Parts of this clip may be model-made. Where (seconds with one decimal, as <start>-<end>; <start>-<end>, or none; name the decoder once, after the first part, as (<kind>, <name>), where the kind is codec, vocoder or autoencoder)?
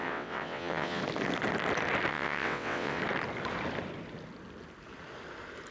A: 0.0-1.0 (vocoder, WaveNeXt); 2.1-3.0